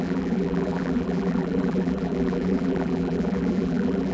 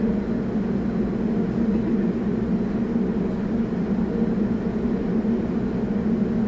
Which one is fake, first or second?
first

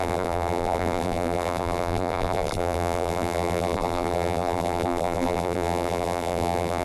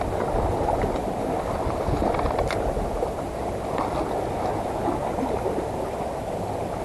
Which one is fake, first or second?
first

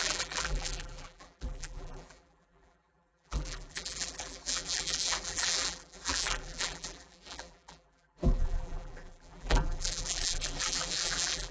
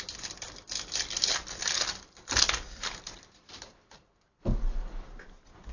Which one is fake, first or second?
first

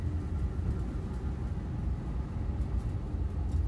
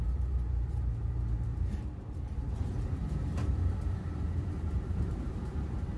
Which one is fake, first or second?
second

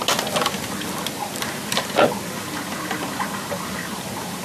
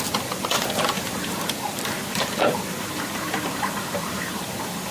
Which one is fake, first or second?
second